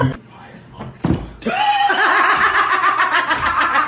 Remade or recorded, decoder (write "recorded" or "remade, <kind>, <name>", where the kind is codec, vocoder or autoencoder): recorded